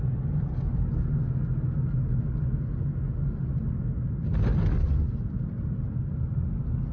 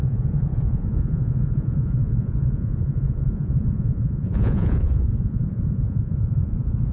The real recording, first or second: first